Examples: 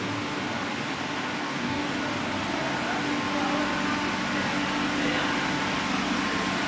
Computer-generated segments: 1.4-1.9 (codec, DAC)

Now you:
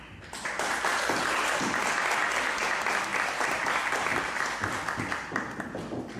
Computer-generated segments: none

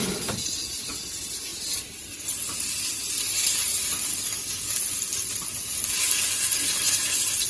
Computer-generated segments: 4.1-4.7 (codec, DAC)

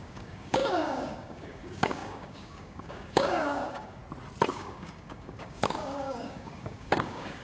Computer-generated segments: 0.0-4.0 (codec, DAC); 4.5-7.4